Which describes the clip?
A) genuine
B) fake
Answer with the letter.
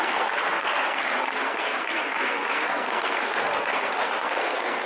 B